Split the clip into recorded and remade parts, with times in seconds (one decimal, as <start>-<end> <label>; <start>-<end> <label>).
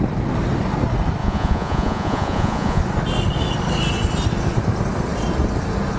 0.0-1.2 recorded; 1.2-2.8 remade; 2.8-6.0 recorded